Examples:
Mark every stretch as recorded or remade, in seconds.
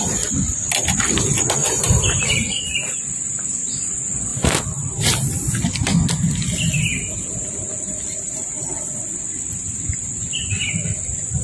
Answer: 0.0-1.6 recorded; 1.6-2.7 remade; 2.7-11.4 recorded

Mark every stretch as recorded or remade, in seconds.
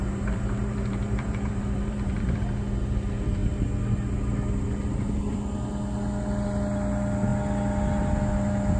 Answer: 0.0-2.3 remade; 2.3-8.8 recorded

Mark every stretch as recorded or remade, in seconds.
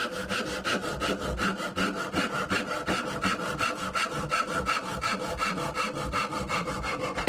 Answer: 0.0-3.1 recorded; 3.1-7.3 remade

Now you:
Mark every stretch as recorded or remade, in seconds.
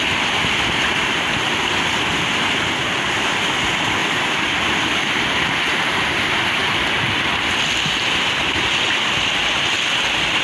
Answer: 0.0-10.4 remade